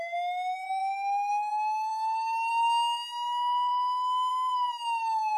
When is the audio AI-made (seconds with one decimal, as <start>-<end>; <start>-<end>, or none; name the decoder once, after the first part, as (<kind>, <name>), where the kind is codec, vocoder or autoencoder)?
1.9-2.5 (autoencoder, DAC-VAE)